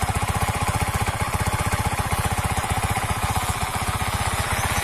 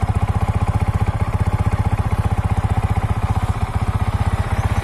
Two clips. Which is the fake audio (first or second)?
first